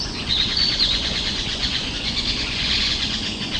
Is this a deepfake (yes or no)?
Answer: yes